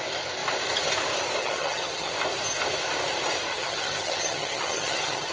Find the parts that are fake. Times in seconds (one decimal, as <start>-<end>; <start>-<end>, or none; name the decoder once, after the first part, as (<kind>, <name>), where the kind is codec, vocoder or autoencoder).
1.4-2.1 (vocoder, HiFi-GAN); 3.5-5.3